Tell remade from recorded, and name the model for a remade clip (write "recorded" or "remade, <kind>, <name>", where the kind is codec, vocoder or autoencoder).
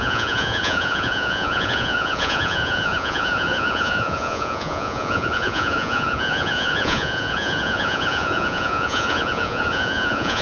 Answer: remade, vocoder, Vocos